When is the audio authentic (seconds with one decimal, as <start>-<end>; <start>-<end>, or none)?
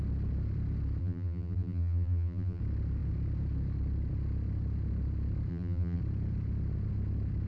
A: 0.0-1.0; 2.6-5.5; 6.0-7.5